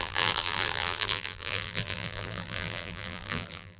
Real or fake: fake